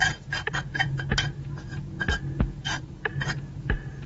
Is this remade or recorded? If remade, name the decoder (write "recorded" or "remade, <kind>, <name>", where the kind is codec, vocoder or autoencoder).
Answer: remade, vocoder, Vocos